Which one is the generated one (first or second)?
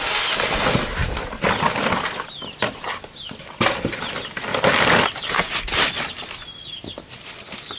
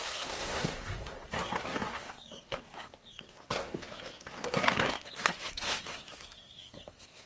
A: second